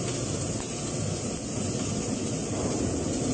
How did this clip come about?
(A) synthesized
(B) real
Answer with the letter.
B